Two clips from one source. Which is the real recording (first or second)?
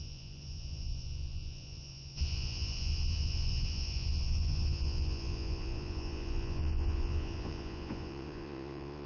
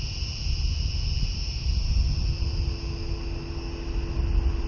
second